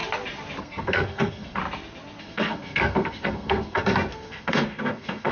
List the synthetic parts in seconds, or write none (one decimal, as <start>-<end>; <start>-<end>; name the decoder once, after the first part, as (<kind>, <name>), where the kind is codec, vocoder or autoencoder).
0.6-1.6 (codec, SNAC); 2.2-5.3

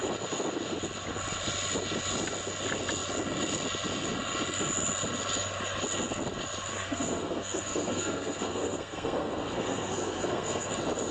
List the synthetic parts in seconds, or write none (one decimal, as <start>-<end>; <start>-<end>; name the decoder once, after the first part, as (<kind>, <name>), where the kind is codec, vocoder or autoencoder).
6.7-10.7 (codec, SNAC)

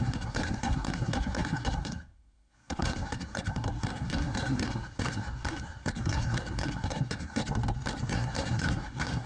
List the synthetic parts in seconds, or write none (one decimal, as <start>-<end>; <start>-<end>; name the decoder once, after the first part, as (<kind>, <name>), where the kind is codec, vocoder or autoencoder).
0.0-7.4 (codec, SNAC); 8.1-9.3

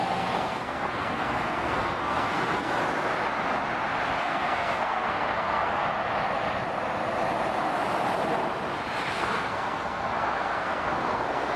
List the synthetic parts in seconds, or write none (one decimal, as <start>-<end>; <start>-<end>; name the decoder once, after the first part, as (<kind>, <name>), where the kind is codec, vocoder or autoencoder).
0.0-2.8 (codec, SNAC); 4.2-5.8; 9.1-11.6

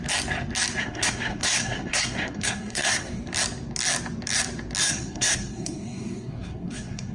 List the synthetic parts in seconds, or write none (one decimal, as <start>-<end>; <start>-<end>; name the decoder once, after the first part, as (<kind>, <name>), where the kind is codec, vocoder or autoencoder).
0.8-3.2 (codec, SNAC); 4.8-7.1

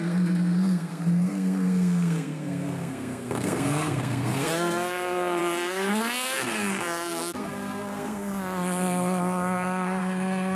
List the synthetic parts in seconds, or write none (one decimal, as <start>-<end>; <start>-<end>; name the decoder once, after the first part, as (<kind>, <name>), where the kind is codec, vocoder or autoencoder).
0.0-10.6 (codec, SNAC)

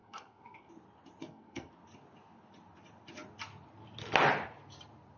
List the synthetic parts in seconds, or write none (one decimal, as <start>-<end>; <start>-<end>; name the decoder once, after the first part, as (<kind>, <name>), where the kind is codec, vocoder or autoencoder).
0.0-0.7 (codec, SNAC); 1.2-1.7